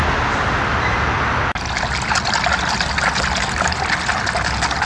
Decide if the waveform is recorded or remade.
recorded